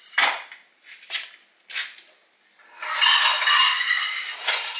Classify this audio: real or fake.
real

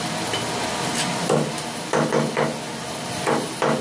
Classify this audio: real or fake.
real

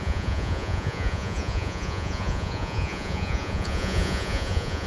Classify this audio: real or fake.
fake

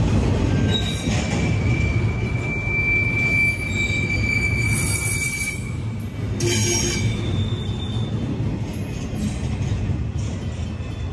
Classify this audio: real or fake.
real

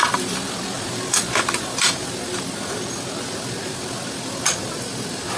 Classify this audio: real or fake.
fake